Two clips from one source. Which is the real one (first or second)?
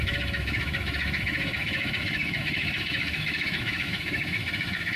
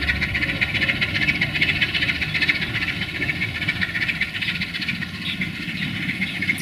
second